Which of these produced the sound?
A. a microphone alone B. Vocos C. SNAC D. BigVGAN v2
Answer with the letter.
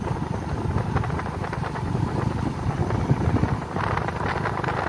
A